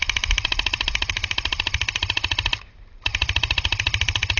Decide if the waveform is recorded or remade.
remade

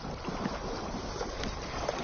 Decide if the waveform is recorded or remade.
recorded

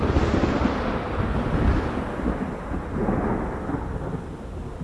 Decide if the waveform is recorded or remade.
recorded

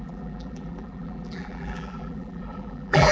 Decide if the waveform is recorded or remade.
remade